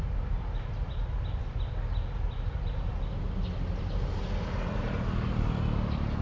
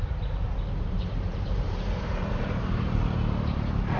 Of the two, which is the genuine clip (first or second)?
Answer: first